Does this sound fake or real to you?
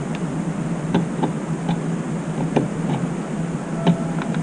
real